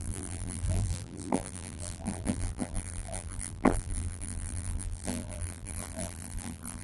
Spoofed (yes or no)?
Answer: yes